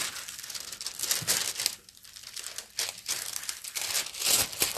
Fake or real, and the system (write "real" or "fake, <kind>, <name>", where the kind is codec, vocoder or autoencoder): real